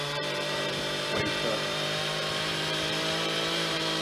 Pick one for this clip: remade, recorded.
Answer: remade